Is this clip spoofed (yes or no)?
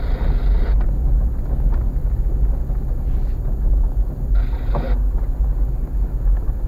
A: no